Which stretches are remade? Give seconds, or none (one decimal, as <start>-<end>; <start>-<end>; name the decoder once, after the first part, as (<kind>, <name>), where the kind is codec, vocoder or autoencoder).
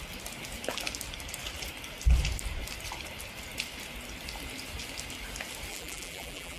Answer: 5.7-6.6 (vocoder, BigVGAN v2)